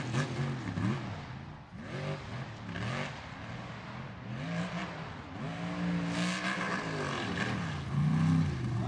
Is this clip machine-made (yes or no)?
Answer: no